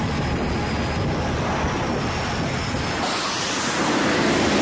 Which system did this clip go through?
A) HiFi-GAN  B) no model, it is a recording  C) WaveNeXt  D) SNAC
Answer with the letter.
B